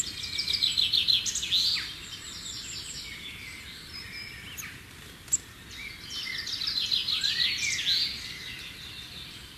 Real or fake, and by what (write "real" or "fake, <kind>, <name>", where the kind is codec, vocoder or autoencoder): real